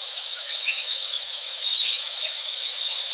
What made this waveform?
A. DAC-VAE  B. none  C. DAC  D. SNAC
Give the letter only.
A